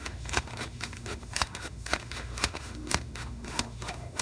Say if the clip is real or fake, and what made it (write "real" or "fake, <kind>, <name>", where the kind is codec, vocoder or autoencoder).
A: fake, autoencoder, DAC-VAE